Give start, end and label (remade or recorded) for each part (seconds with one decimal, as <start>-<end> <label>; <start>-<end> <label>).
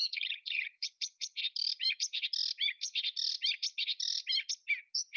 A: 0.0-1.4 remade; 1.4-5.2 recorded